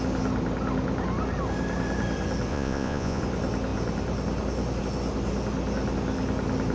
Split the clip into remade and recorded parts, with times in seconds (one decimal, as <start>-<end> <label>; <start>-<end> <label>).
0.0-2.5 recorded; 2.5-3.2 remade; 3.2-6.7 recorded